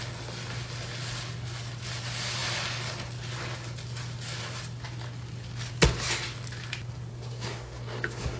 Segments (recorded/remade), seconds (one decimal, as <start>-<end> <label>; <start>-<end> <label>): 0.0-7.1 recorded; 7.1-8.4 remade